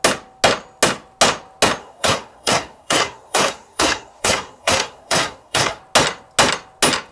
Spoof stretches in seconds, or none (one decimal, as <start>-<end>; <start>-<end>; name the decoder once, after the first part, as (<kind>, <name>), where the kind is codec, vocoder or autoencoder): 1.8-5.8 (codec, SNAC)

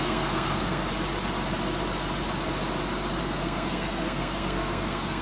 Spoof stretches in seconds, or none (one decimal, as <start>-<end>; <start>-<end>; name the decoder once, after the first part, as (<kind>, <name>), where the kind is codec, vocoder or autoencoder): 0.0-0.9 (codec, SNAC); 3.2-5.2

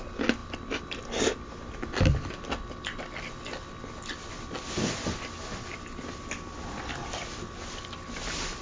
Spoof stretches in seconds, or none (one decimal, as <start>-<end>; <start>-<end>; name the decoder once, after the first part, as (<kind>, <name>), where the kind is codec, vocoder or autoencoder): none

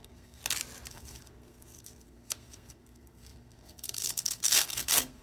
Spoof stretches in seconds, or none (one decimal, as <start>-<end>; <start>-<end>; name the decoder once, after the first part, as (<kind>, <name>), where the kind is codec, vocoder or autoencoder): 0.0-0.4 (codec, SNAC); 0.9-5.2

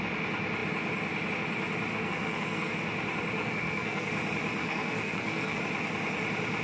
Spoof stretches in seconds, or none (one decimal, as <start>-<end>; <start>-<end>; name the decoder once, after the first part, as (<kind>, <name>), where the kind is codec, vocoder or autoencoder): 1.9-2.7 (codec, SNAC); 3.4-4.1; 4.6-5.6

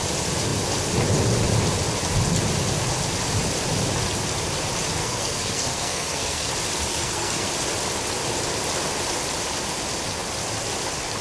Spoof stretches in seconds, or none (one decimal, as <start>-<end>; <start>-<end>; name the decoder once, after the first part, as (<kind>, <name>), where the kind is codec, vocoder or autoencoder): 5.0-6.5 (codec, SNAC); 6.9-7.5

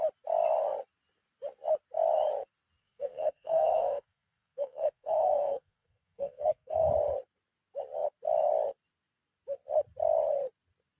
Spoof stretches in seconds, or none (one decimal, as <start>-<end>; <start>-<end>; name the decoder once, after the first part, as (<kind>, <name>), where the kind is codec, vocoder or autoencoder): 2.8-6.9 (codec, SNAC)